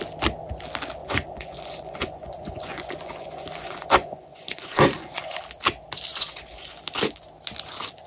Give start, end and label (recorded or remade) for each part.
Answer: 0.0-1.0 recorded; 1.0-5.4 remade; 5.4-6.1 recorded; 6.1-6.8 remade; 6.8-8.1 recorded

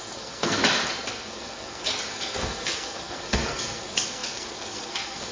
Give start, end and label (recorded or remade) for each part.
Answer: 0.0-0.6 remade; 0.6-1.1 recorded; 1.1-5.3 remade

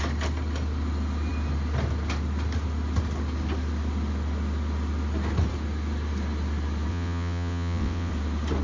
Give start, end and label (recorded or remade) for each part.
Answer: 0.0-6.9 recorded; 6.9-8.1 remade; 8.1-8.6 recorded